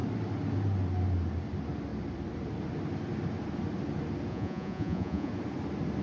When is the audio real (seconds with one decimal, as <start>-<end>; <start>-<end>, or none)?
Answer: 0.0-4.3; 5.3-6.0